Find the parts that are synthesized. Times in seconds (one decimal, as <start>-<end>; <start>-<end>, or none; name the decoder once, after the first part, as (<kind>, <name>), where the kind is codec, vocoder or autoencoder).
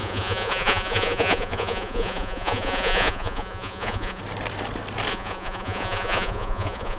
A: 0.0-4.2 (vocoder, Vocos); 5.1-7.0